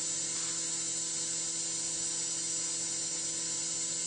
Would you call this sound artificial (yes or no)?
no